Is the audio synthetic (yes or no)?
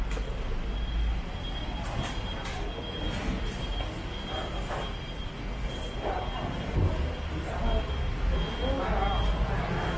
no